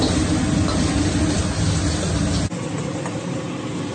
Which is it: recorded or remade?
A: recorded